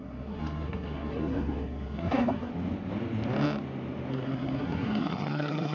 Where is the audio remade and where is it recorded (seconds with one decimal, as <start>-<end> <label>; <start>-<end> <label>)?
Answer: 0.0-2.5 remade; 2.5-4.1 recorded; 4.1-5.7 remade